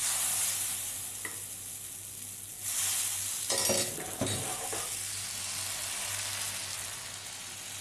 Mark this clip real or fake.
real